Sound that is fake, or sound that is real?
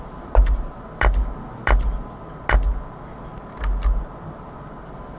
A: real